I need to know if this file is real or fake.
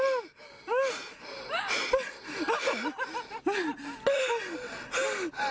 real